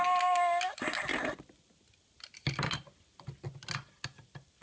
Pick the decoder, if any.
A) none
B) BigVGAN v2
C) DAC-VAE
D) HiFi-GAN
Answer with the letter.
A